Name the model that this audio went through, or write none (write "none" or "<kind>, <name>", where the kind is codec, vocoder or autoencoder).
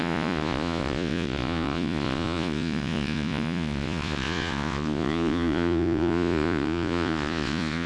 vocoder, Vocos